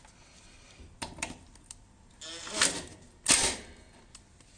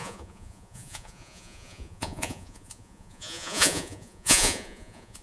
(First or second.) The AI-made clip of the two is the second